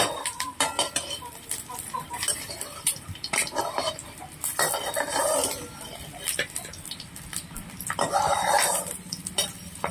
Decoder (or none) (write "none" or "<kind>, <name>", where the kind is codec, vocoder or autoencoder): vocoder, BigVGAN v2